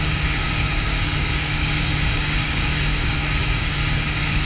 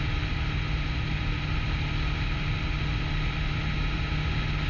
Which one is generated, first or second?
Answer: first